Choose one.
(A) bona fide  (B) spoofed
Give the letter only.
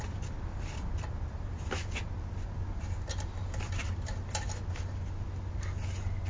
A